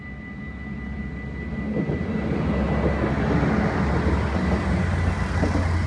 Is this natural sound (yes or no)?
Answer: yes